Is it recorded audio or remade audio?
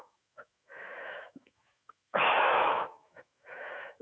remade